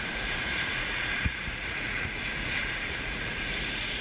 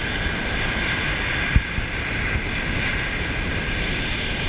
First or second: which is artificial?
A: first